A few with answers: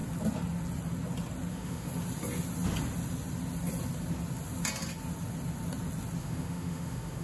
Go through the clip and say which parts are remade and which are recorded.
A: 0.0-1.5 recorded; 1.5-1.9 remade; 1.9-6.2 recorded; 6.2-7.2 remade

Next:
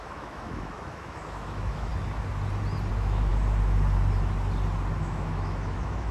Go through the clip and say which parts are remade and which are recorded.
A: 0.0-1.9 remade; 1.9-2.9 recorded; 2.9-3.3 remade; 3.3-5.0 recorded; 5.0-6.1 remade

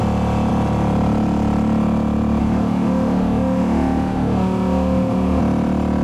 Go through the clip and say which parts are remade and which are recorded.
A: 0.0-2.4 recorded; 2.4-5.4 remade; 5.4-6.0 recorded

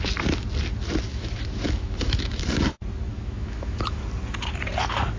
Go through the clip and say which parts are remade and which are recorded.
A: 0.0-1.1 recorded; 1.1-2.4 remade; 2.4-3.1 recorded; 3.1-4.0 remade; 4.0-5.2 recorded